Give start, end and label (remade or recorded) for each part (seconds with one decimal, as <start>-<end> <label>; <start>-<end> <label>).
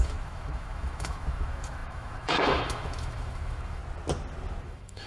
0.0-3.8 remade; 3.8-4.6 recorded; 4.6-5.1 remade